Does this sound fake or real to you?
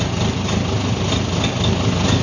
real